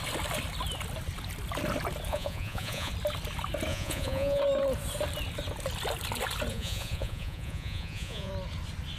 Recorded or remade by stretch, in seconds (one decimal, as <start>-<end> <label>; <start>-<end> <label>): 0.0-2.1 recorded; 2.1-2.9 remade; 2.9-3.7 recorded; 3.7-4.4 remade; 4.4-6.5 recorded; 6.5-8.3 remade; 8.3-9.0 recorded